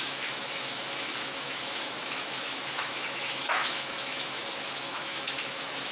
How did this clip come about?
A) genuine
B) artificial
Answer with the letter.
B